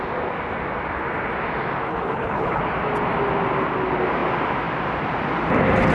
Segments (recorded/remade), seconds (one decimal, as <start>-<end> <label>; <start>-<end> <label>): 0.0-1.9 recorded; 1.9-2.6 remade; 2.6-5.9 recorded